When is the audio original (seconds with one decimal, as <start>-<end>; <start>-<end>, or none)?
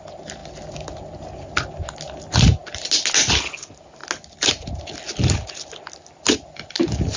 0.0-7.2